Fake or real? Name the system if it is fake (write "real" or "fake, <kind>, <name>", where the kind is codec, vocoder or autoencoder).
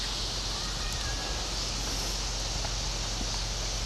real